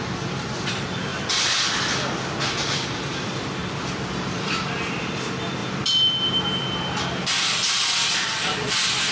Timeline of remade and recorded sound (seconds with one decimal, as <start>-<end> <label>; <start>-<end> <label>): 0.0-1.1 remade; 1.1-2.5 recorded; 2.5-3.6 remade; 3.6-4.2 recorded; 4.2-9.1 remade